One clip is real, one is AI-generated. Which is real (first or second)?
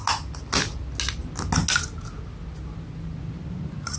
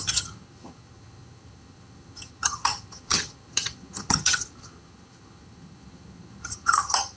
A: first